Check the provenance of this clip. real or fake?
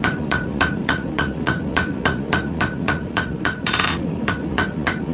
fake